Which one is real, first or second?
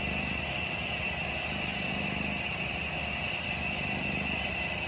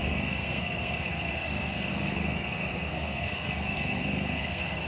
first